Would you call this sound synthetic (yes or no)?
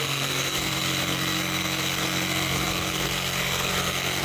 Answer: yes